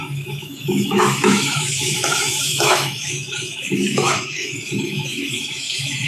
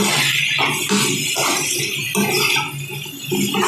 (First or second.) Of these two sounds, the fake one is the first